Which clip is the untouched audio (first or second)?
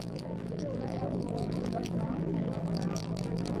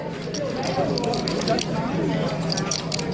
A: second